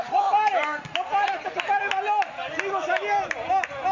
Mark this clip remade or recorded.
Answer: recorded